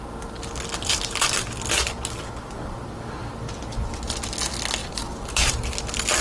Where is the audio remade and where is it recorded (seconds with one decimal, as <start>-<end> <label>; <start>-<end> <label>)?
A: 0.0-4.8 recorded; 4.8-5.7 remade; 5.7-6.2 recorded